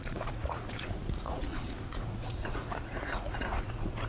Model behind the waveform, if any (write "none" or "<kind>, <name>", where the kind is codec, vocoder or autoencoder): vocoder, Vocos